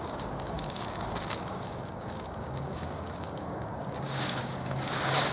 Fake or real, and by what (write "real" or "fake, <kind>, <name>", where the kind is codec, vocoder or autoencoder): fake, codec, DAC